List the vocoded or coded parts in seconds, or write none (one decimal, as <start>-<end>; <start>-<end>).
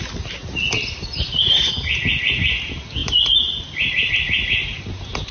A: none